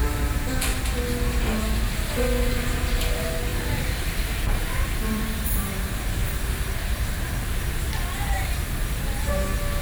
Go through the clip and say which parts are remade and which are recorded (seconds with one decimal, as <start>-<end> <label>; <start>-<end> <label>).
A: 0.0-0.7 remade; 0.7-2.5 recorded; 2.5-6.2 remade; 6.2-9.8 recorded